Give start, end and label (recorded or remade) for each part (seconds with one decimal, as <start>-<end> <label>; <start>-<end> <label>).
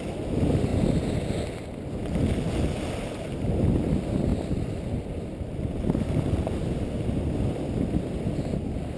0.0-9.0 recorded